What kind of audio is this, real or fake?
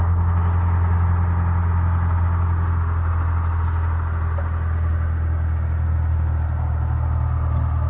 real